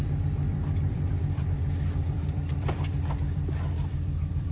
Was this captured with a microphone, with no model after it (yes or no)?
no